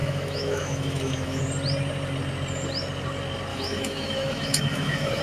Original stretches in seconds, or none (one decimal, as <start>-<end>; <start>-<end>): 1.4-3.5